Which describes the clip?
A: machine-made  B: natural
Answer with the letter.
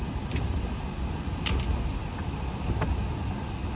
B